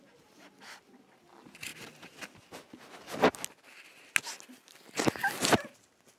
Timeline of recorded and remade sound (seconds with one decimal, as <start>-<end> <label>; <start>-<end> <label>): 0.0-6.2 recorded